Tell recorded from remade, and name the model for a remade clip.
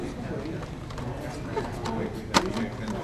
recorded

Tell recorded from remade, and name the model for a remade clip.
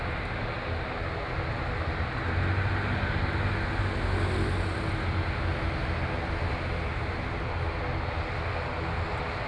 recorded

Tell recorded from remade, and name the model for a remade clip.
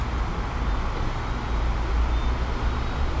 recorded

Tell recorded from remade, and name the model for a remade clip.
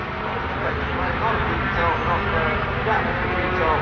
recorded